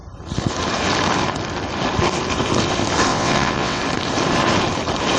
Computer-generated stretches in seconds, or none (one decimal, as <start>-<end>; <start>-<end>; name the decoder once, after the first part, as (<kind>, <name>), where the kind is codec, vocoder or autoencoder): 3.1-3.8 (vocoder, WaveNeXt)